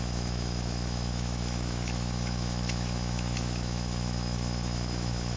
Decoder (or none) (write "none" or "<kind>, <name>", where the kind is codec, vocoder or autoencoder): autoencoder, DAC-VAE